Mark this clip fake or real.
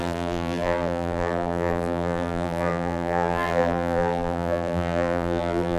fake